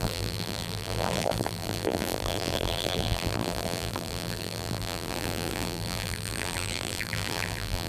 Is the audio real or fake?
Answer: fake